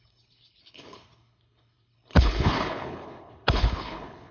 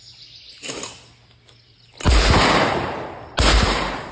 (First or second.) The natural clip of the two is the second